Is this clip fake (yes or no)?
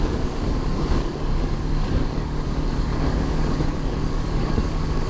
yes